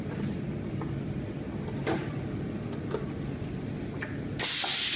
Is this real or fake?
real